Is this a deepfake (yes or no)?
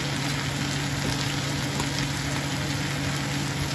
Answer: no